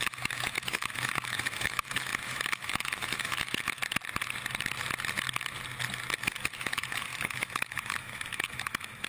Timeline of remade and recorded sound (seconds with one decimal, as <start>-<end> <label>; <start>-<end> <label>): 0.0-3.8 remade; 3.8-6.3 recorded; 6.3-9.1 remade